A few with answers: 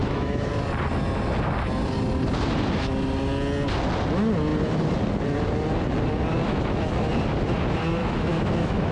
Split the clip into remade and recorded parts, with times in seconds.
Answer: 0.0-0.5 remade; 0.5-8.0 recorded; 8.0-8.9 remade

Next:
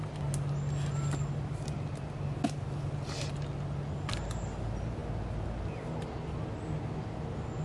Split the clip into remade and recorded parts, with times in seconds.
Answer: 0.0-7.6 recorded

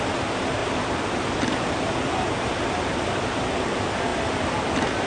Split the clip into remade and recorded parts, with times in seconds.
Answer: 0.0-5.1 recorded

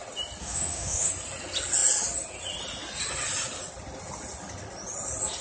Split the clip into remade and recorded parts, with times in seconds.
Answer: 0.0-0.4 recorded; 0.4-1.1 remade; 1.1-5.4 recorded

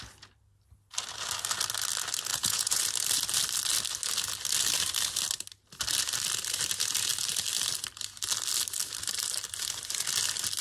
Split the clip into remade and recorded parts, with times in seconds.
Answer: 0.0-2.3 recorded; 2.3-2.8 remade; 2.8-10.6 recorded